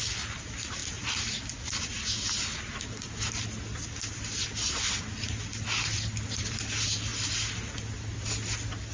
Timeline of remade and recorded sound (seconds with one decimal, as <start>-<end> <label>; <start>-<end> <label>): 0.0-8.9 recorded

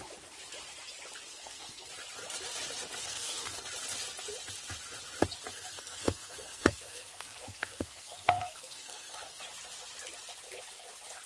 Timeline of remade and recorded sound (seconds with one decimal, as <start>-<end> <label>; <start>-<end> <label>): 0.0-1.3 recorded; 1.3-1.9 remade; 1.9-3.0 recorded; 3.0-3.6 remade; 3.6-5.5 recorded; 5.5-9.4 remade; 9.4-11.3 recorded